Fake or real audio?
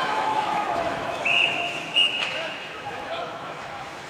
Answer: fake